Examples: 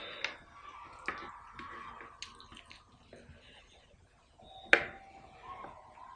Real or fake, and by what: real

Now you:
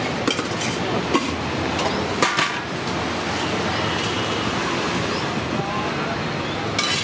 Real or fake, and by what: real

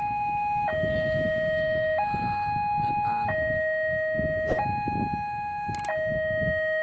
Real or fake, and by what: real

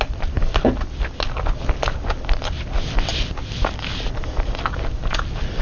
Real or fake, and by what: real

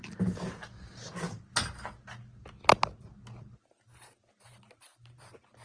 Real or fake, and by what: real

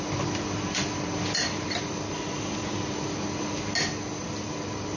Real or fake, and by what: real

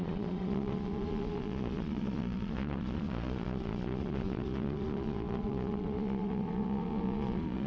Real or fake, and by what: fake, vocoder, Vocos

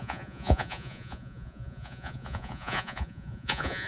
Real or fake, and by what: fake, vocoder, Vocos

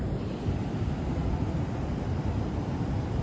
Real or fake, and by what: real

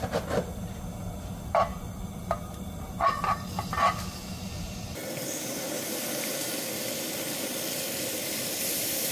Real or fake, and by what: real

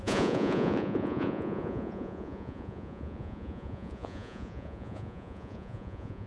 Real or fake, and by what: fake, vocoder, Vocos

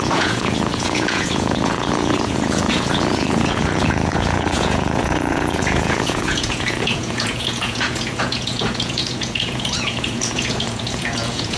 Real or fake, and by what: fake, vocoder, Vocos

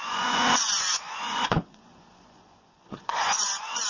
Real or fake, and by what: fake, vocoder, Vocos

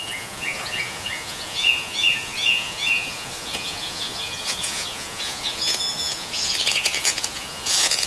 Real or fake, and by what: fake, vocoder, Vocos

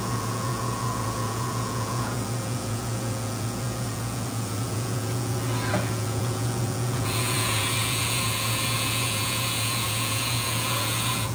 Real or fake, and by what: fake, vocoder, Vocos